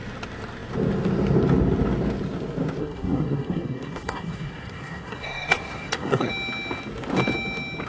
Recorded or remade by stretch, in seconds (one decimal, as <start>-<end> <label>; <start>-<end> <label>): 0.0-2.8 recorded; 2.8-6.3 remade; 6.3-7.9 recorded